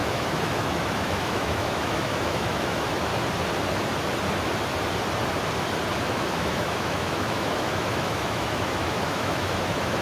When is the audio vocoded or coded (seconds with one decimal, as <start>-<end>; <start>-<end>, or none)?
0.0-3.1; 6.0-10.0